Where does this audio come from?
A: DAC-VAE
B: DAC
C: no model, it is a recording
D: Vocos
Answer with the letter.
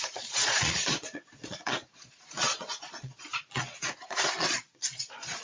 D